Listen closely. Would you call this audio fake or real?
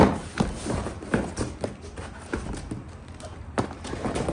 real